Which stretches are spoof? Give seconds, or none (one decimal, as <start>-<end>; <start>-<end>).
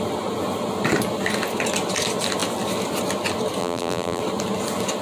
3.6-4.2